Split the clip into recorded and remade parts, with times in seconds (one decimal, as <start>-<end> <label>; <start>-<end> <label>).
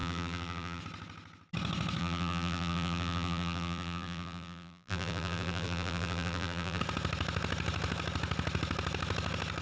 0.0-0.8 remade; 0.8-2.0 recorded; 2.0-6.8 remade; 6.8-9.6 recorded